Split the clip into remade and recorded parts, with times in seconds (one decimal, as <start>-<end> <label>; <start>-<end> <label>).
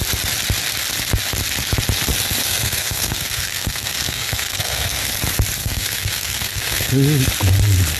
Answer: 0.0-2.4 recorded; 2.4-5.1 remade; 5.1-5.6 recorded; 5.6-6.9 remade; 6.9-8.0 recorded